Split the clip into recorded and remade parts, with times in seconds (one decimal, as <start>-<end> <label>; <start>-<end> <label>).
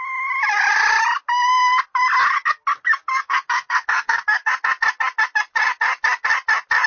0.0-3.1 recorded; 3.1-4.5 remade; 4.5-6.9 recorded